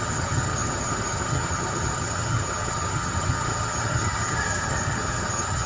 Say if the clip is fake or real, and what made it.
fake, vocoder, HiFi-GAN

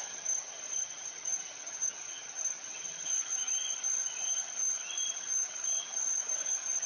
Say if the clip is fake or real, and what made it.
fake, vocoder, HiFi-GAN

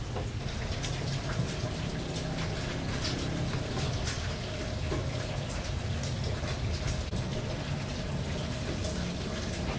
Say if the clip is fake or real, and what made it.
real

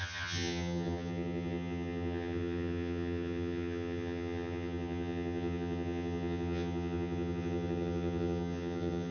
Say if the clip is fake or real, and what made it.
fake, vocoder, HiFi-GAN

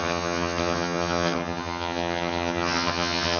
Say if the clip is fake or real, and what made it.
fake, vocoder, HiFi-GAN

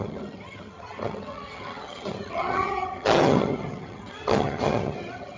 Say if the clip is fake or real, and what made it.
fake, vocoder, HiFi-GAN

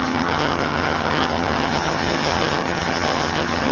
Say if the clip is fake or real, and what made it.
fake, vocoder, HiFi-GAN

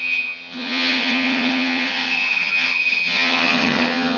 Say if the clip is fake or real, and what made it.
fake, vocoder, HiFi-GAN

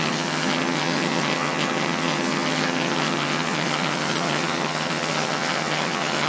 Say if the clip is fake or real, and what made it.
fake, vocoder, HiFi-GAN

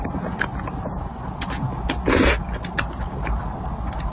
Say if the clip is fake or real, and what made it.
real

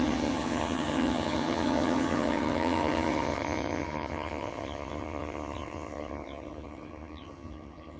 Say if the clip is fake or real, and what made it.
fake, vocoder, HiFi-GAN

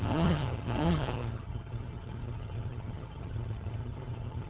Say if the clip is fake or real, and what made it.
fake, vocoder, HiFi-GAN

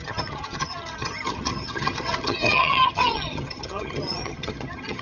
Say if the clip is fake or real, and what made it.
fake, vocoder, HiFi-GAN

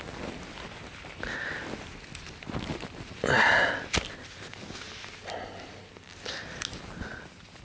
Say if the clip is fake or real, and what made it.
real